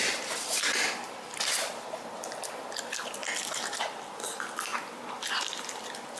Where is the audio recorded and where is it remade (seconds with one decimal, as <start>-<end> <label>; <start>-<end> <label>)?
0.0-3.2 remade; 3.2-3.8 recorded; 3.8-4.7 remade; 4.7-5.6 recorded; 5.6-6.2 remade